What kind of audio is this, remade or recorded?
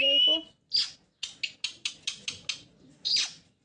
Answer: recorded